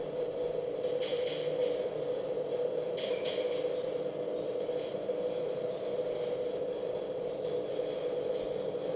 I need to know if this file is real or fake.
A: real